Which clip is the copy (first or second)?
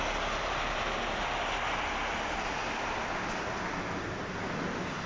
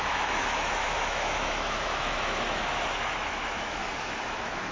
second